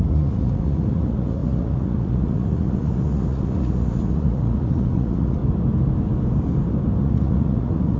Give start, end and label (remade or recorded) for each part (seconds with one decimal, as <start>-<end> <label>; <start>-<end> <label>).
0.0-5.4 remade; 5.4-7.0 recorded; 7.0-8.0 remade